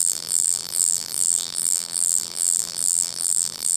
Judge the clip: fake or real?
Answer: fake